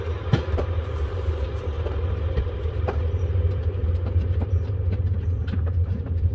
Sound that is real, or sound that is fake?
fake